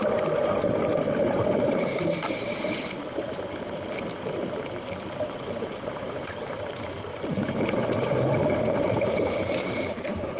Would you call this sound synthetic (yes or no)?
yes